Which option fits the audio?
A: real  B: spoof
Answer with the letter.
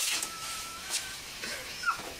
B